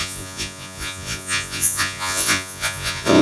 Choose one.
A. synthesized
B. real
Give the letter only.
A